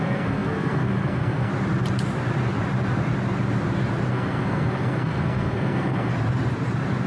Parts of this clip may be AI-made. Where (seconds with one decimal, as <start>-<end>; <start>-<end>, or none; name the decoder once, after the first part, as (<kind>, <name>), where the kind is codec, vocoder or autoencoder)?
0.0-1.5 (codec, SNAC); 4.1-6.1